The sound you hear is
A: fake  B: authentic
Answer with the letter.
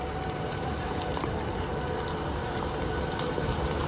A